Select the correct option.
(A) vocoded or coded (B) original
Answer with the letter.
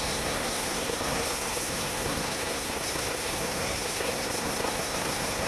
A